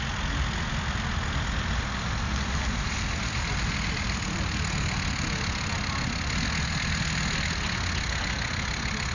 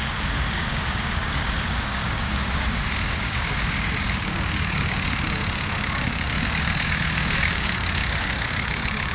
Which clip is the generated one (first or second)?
second